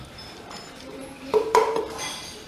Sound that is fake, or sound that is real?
fake